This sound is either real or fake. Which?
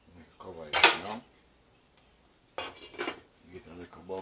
real